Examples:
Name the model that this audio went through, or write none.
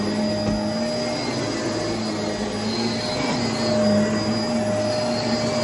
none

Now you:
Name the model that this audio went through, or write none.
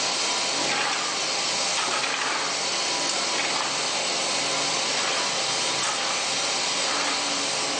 none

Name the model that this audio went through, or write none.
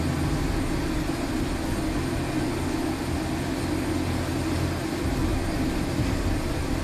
none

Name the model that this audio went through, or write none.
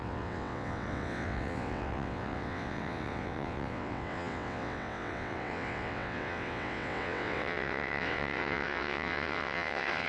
vocoder, WaveNeXt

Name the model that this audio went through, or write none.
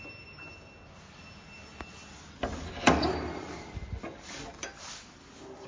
none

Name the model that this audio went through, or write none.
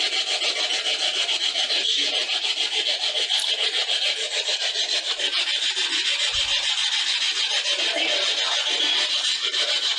none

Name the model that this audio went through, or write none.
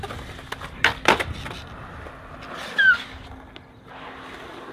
none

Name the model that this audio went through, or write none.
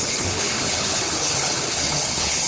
codec, HILCodec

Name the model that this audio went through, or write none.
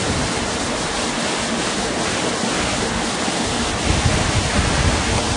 none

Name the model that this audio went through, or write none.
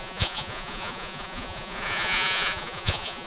vocoder, Vocos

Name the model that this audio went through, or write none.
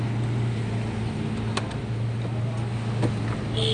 none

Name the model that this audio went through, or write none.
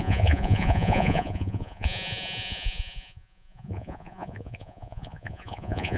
vocoder, Vocos